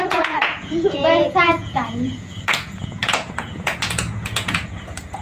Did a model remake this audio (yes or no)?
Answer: yes